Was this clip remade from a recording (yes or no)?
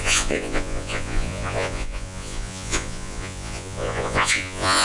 yes